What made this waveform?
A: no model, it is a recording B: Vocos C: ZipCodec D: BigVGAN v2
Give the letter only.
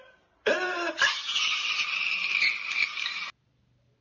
D